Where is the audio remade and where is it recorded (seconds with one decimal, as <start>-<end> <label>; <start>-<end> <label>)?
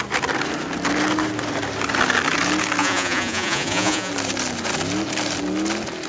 0.0-2.8 recorded; 2.8-4.1 remade; 4.1-6.1 recorded